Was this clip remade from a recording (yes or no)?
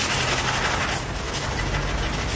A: no